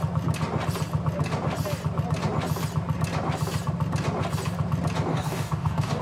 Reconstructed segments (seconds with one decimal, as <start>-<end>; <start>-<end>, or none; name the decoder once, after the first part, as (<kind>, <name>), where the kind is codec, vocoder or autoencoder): 5.1-6.0 (codec, DAC)